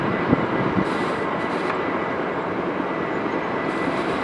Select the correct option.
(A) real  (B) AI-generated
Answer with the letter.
A